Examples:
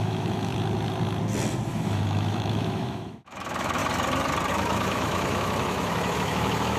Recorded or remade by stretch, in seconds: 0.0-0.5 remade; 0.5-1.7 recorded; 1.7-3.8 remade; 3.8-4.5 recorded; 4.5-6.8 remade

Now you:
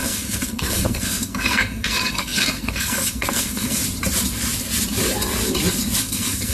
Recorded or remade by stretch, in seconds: 0.0-3.8 remade; 3.8-6.0 recorded; 6.0-6.5 remade

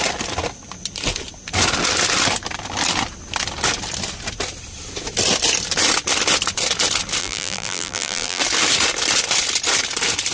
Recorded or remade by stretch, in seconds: 0.0-7.2 recorded; 7.2-8.4 remade; 8.4-10.3 recorded

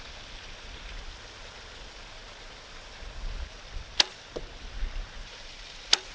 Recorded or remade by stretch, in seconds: 0.0-6.1 recorded

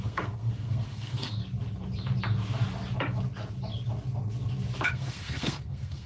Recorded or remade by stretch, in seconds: 0.0-1.4 remade; 1.4-4.9 recorded; 4.9-6.1 remade

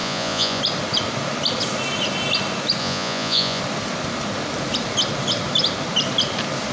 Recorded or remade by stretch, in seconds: 0.0-0.6 remade; 0.6-2.8 recorded; 2.8-3.6 remade; 3.6-6.7 recorded

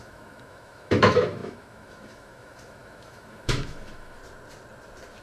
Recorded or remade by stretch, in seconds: 0.0-4.2 remade; 4.2-5.2 recorded

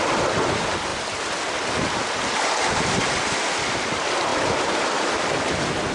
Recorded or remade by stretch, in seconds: 0.0-0.9 remade; 0.9-3.0 recorded; 3.0-5.9 remade